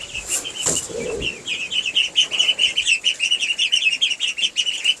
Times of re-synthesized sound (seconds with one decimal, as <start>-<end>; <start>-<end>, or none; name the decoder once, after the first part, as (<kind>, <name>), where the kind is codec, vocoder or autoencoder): none